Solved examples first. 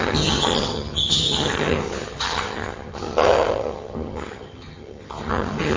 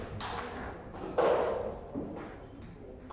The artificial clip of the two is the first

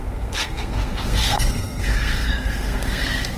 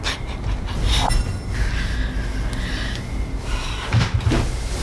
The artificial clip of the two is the first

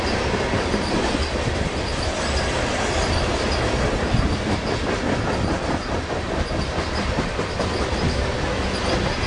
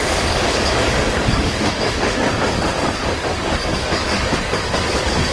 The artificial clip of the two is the second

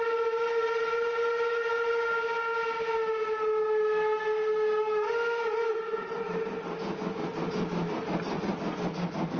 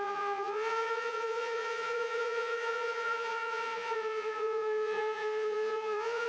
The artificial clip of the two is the second